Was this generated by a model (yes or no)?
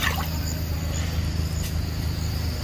no